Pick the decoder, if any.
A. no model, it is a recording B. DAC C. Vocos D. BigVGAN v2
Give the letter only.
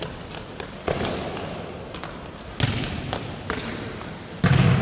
A